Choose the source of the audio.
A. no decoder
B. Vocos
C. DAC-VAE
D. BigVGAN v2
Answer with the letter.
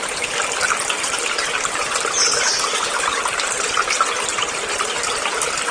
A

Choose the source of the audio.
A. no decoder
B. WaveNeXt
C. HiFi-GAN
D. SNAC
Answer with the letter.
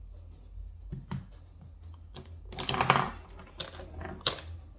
A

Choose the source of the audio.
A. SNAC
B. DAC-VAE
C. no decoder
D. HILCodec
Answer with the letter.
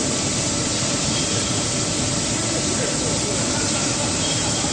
C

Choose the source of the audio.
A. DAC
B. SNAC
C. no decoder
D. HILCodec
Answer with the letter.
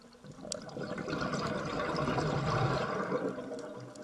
C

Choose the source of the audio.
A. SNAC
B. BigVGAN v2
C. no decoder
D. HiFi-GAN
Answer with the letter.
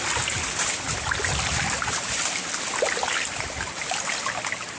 C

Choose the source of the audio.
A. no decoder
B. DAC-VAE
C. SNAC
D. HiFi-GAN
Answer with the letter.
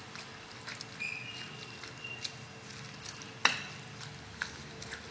A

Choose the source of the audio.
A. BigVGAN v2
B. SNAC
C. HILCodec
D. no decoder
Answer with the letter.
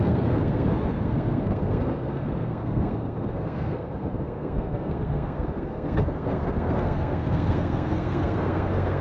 B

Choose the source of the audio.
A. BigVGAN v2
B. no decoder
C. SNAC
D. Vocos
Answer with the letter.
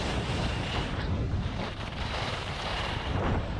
A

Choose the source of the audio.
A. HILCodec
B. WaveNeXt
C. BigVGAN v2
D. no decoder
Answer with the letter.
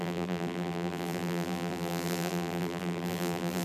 C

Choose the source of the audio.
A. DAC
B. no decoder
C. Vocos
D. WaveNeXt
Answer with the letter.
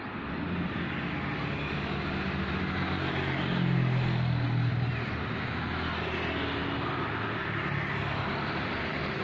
B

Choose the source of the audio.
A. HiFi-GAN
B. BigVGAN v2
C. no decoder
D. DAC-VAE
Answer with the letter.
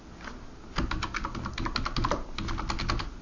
C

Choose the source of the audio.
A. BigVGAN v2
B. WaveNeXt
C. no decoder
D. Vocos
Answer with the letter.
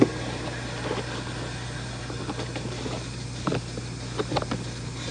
C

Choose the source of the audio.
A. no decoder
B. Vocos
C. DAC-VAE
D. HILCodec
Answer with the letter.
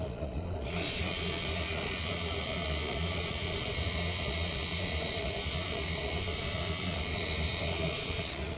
B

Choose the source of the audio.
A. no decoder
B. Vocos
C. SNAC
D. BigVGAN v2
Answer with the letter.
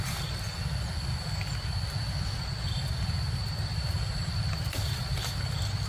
A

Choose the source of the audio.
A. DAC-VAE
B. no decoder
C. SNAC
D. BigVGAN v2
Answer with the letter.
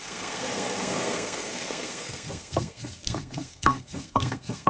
C